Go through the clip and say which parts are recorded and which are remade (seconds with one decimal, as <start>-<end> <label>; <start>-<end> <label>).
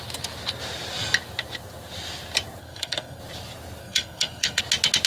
0.0-2.6 recorded; 2.6-3.2 remade; 3.2-3.8 recorded; 3.8-4.6 remade; 4.6-5.1 recorded